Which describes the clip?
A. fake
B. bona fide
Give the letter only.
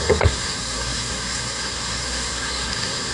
A